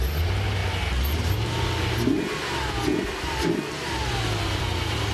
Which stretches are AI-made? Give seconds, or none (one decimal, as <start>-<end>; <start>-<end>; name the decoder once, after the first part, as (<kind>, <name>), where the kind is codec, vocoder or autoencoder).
none

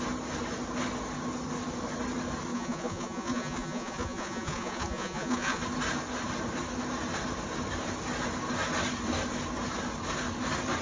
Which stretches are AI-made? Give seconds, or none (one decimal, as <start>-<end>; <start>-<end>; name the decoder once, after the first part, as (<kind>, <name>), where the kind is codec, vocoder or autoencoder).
2.5-5.6 (vocoder, Vocos)

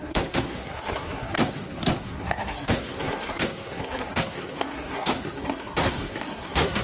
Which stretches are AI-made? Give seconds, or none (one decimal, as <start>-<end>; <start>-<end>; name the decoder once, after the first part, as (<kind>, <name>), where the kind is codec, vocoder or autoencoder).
0.0-6.8 (codec, SNAC)

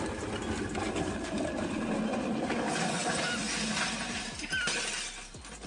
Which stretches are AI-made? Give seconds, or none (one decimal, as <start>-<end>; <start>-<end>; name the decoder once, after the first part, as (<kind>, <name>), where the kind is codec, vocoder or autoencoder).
none

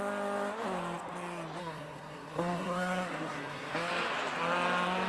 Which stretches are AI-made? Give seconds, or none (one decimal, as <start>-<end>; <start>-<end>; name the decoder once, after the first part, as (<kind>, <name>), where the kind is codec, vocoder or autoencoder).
1.6-3.9 (codec, SNAC)

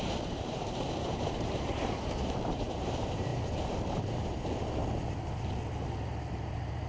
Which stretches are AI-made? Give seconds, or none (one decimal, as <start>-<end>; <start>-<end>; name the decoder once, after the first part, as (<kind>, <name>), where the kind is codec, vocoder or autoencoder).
0.0-3.3 (vocoder, BigVGAN v2); 6.3-6.9